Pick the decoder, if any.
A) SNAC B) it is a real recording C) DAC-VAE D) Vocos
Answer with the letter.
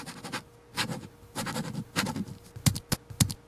B